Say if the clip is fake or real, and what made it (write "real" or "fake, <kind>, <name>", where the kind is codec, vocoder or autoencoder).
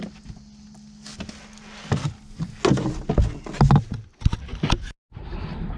real